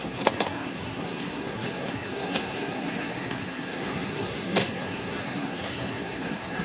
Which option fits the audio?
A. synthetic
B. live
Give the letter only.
A